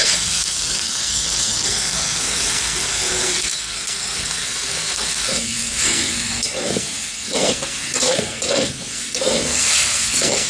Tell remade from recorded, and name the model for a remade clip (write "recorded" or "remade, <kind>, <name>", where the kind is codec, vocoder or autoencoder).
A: remade, codec, SNAC